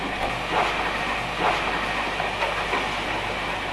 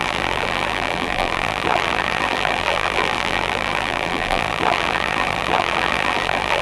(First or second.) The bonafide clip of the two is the first